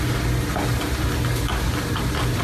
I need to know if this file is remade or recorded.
recorded